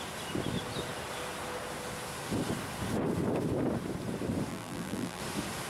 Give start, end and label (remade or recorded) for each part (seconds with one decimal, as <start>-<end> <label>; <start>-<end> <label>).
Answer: 0.0-4.5 recorded; 4.5-5.2 remade; 5.2-5.7 recorded